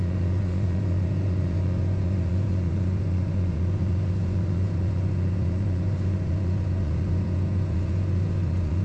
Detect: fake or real fake